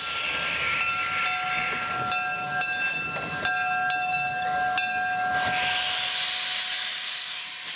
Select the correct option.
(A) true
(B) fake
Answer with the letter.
A